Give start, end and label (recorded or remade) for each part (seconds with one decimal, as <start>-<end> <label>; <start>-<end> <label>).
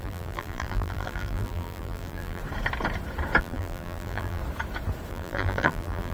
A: 0.0-2.4 remade; 2.4-3.4 recorded; 3.4-4.4 remade; 4.4-5.1 recorded; 5.1-6.1 remade